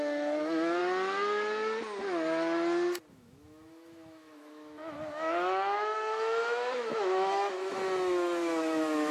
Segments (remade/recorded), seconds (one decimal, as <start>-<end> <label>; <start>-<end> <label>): 0.0-0.8 remade; 0.8-3.1 recorded; 3.1-9.1 remade